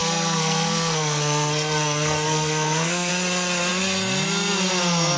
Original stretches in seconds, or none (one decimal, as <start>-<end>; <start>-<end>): 3.1-5.2